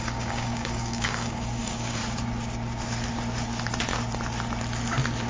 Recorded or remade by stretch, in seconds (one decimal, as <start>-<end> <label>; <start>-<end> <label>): 0.0-2.0 remade; 2.0-5.3 recorded